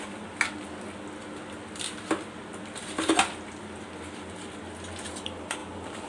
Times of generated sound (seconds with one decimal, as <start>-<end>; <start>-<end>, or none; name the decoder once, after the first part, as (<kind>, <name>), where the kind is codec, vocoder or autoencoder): none